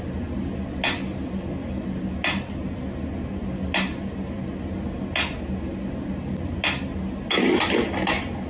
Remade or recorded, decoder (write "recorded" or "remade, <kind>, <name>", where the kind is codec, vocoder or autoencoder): recorded